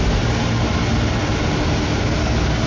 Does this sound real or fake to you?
real